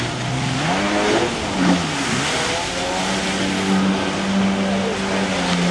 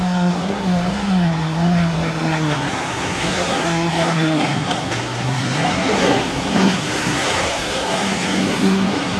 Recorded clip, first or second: first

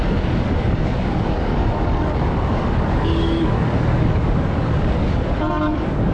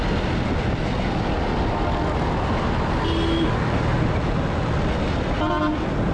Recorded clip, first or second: second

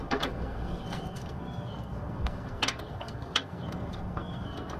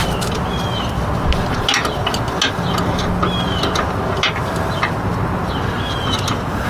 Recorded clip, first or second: second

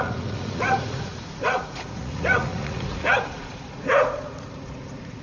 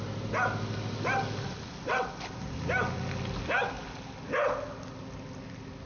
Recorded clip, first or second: second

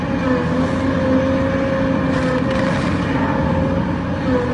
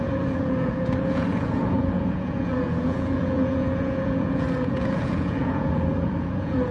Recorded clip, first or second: first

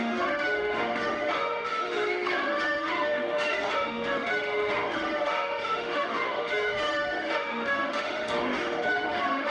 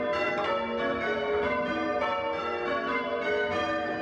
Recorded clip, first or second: second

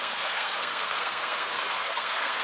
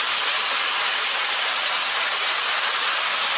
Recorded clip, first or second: second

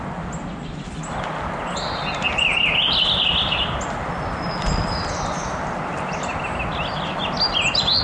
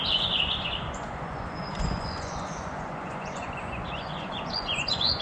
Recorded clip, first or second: first